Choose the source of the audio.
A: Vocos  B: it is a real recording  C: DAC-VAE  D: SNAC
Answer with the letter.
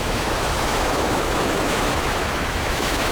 C